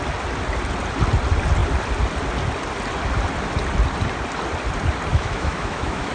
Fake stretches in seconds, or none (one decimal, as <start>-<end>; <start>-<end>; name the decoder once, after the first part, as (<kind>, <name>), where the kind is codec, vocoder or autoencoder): 5.1-6.1 (autoencoder, DAC-VAE)